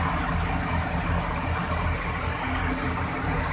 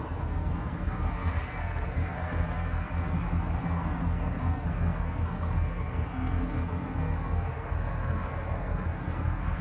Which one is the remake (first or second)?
second